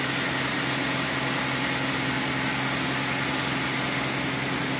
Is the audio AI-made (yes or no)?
no